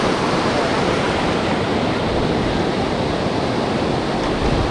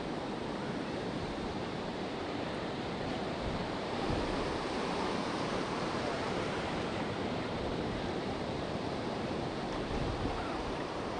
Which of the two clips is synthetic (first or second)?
second